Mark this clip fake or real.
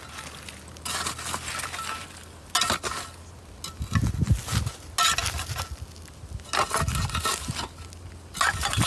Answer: real